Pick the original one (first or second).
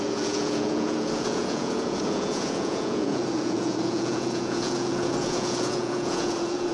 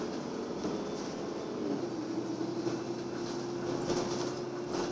second